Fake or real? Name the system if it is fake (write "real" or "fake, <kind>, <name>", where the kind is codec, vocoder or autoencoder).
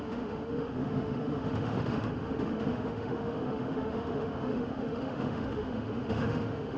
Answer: fake, autoencoder, DAC-VAE